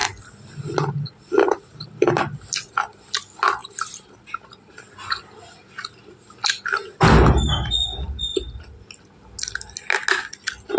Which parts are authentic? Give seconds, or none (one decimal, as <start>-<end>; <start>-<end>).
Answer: 0.0-3.6; 4.3-10.8